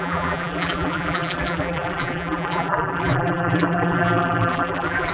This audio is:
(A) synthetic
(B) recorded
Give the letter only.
A